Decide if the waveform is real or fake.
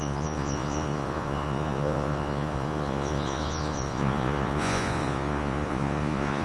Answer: fake